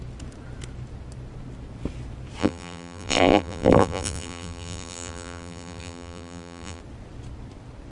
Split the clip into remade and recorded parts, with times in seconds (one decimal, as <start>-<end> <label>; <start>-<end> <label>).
0.0-2.4 recorded; 2.4-6.8 remade; 6.8-7.9 recorded